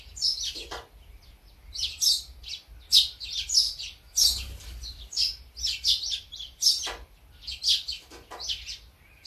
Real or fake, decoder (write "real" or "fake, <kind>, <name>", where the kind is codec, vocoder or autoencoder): real